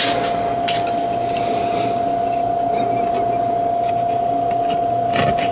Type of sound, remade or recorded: recorded